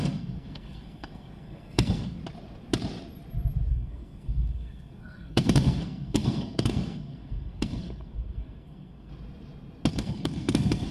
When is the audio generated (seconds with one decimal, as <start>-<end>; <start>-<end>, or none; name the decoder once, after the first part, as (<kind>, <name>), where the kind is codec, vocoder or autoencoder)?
0.0-2.2 (codec, SNAC); 3.7-9.1; 9.9-10.9